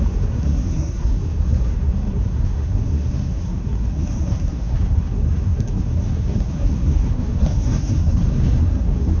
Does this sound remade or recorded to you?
remade